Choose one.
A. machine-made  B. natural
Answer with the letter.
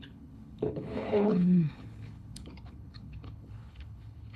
A